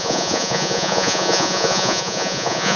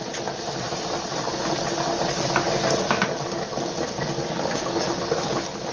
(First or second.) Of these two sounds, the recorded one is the second